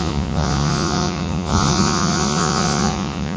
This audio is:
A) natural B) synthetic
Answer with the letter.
B